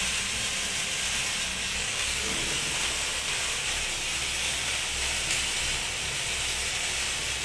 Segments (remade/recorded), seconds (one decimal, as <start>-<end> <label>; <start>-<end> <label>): 0.0-1.5 recorded; 1.5-2.4 remade; 2.4-7.4 recorded